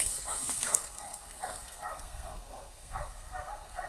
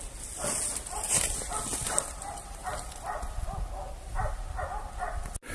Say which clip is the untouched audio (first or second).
second